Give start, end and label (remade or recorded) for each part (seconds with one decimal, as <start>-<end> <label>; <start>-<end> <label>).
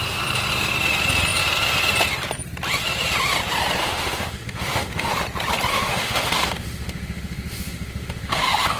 0.0-3.8 recorded; 3.8-5.1 remade; 5.1-5.7 recorded; 5.7-8.8 remade